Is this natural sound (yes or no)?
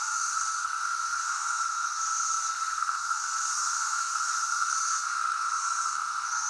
no